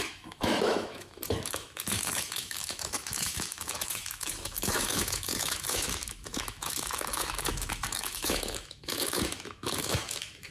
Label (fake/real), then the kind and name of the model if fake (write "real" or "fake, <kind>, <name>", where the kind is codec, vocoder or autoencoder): fake, autoencoder, DAC-VAE